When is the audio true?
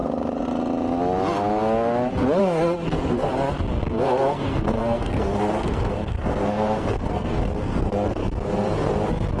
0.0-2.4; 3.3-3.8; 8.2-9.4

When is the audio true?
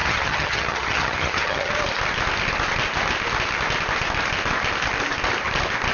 1.7-5.9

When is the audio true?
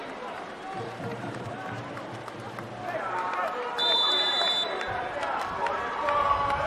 1.9-3.8; 4.8-6.7